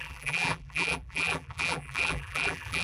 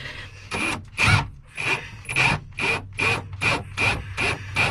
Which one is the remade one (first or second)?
first